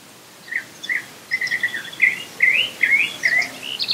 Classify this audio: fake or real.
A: real